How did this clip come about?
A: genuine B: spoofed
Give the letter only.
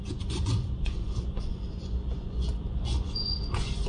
B